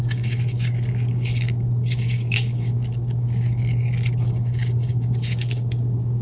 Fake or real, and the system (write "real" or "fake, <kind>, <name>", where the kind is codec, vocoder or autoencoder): fake, codec, DAC